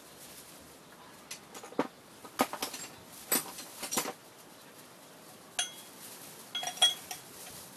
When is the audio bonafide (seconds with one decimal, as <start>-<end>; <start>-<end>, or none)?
0.0-7.8